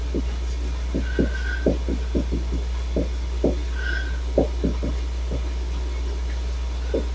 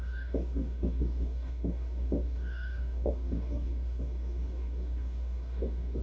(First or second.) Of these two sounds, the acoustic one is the first